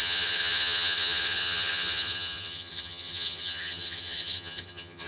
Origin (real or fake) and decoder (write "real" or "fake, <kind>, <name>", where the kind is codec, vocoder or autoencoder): fake, vocoder, HiFi-GAN